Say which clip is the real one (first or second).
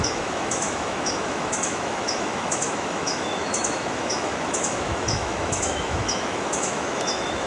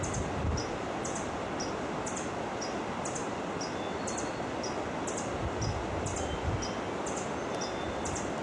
second